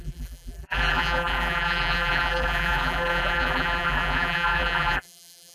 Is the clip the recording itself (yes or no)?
no